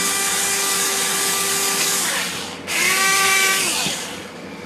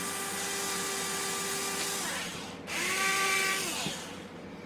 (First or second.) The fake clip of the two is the first